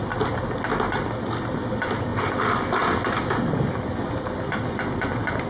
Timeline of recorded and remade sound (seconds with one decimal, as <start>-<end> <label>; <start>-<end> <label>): 0.0-5.5 recorded